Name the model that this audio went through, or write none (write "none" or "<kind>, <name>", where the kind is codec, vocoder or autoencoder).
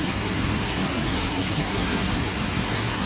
codec, SNAC